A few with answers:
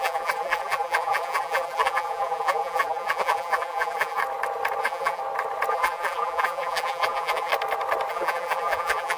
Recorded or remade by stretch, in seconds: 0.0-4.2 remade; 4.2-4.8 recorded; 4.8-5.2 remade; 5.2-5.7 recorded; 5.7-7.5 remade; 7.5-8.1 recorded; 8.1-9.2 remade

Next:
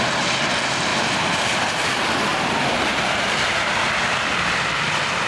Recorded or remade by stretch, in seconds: 0.0-0.9 recorded; 0.9-2.4 remade; 2.4-2.9 recorded; 2.9-4.7 remade; 4.7-5.3 recorded

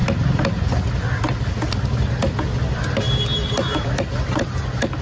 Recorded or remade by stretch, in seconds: 0.0-5.0 recorded

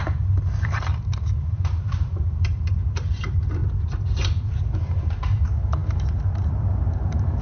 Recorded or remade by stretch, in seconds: 0.0-3.6 remade; 3.6-4.4 recorded; 4.4-7.4 remade

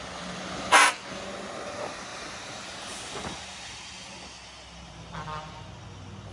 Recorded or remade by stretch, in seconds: 0.0-2.1 recorded; 2.1-3.3 remade; 3.3-6.3 recorded